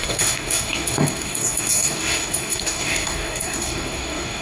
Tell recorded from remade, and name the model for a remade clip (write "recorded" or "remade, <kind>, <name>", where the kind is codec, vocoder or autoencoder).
remade, codec, DAC